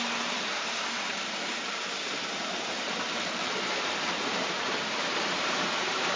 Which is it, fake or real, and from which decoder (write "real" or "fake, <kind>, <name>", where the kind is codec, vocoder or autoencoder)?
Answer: fake, vocoder, BigVGAN v2